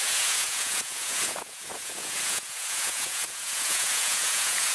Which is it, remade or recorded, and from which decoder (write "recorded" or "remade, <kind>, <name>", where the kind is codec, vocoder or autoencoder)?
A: remade, vocoder, Vocos